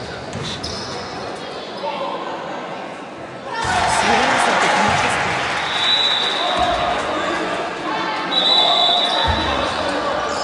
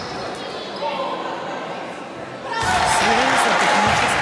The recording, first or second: second